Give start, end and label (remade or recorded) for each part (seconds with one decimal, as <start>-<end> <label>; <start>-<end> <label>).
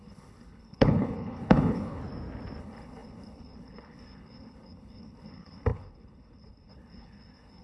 0.0-2.0 remade; 2.0-2.6 recorded; 2.6-7.6 remade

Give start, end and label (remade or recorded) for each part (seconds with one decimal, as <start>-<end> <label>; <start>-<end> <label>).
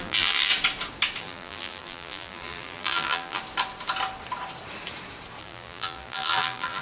0.0-0.5 remade; 0.5-1.2 recorded; 1.2-3.4 remade; 3.4-5.4 recorded; 5.4-6.8 remade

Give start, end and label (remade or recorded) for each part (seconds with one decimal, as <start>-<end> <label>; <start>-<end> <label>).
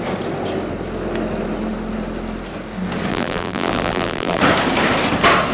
0.0-3.1 recorded; 3.1-4.4 remade; 4.4-5.5 recorded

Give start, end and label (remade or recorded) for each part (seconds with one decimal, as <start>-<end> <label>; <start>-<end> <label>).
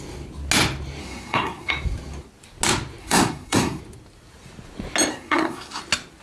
0.0-1.0 recorded; 1.0-1.7 remade; 1.7-3.0 recorded; 3.0-3.8 remade; 3.8-5.1 recorded; 5.1-5.8 remade; 5.8-6.2 recorded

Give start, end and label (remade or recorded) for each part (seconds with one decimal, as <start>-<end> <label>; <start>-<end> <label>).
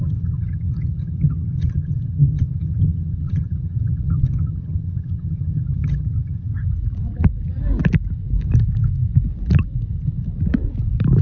0.0-6.6 remade; 6.6-11.2 recorded